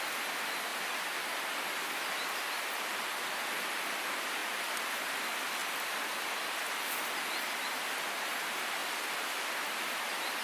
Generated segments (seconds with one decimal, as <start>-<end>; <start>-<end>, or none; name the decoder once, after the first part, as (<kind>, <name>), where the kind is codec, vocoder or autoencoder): 0.7-1.9 (vocoder, BigVGAN v2); 5.6-6.2; 8.8-9.9